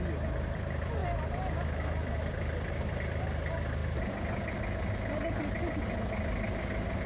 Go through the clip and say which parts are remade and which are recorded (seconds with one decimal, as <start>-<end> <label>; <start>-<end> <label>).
0.0-7.1 recorded